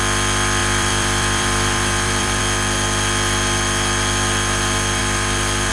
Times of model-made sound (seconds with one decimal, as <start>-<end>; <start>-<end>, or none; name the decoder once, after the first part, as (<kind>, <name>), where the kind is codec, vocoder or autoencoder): 0.6-2.4 (vocoder, BigVGAN v2); 5.0-5.7